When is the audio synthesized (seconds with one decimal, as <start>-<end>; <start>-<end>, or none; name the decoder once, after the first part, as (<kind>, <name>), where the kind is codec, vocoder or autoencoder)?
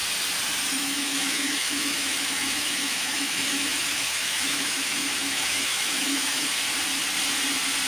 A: 0.7-6.6 (autoencoder, DAC-VAE)